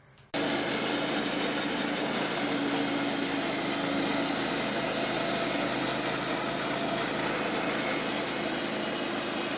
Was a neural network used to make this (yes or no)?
no